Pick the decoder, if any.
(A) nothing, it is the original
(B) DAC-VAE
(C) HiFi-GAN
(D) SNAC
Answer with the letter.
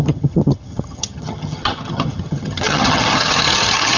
C